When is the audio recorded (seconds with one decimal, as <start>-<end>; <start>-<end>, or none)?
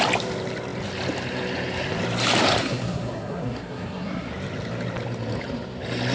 0.0-2.6; 4.3-6.1